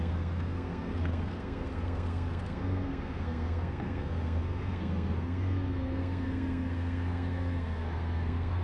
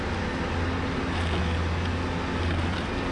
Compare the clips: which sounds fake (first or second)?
first